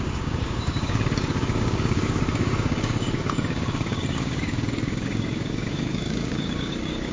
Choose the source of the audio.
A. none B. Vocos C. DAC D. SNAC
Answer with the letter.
C